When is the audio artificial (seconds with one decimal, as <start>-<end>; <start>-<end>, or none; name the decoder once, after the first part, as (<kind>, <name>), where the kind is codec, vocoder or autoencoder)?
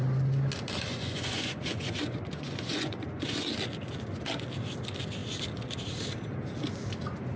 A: 0.9-3.5 (vocoder, Vocos)